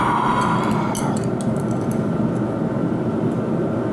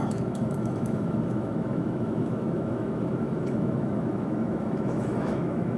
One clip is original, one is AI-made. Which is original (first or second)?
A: first